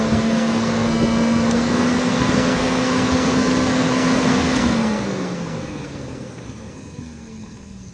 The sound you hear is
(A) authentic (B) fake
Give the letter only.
B